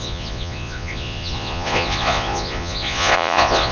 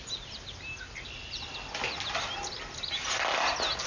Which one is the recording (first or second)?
second